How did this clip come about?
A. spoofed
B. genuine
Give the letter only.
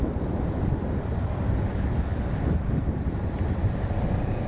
B